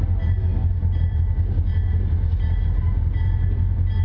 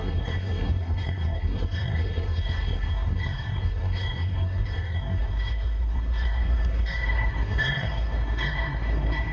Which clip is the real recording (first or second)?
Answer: first